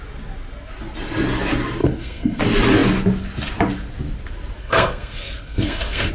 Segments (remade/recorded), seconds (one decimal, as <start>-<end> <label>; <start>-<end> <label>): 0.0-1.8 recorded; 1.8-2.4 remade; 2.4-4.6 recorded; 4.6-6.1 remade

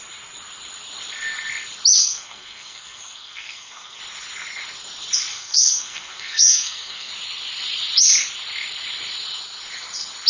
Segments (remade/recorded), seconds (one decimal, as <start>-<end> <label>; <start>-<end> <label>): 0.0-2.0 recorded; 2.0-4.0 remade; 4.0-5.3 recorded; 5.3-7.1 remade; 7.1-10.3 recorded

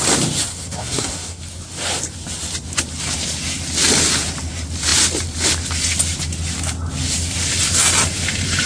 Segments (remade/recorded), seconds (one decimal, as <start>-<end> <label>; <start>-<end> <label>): 0.0-0.5 recorded; 0.5-1.4 remade; 1.4-8.7 recorded